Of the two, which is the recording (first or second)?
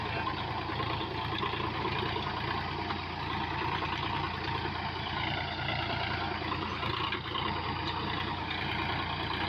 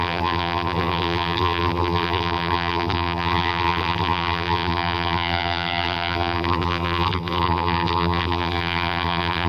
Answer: first